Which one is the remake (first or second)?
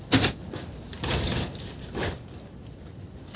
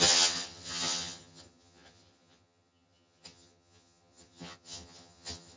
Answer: second